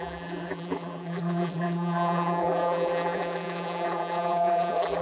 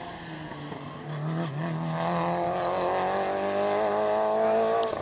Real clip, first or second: second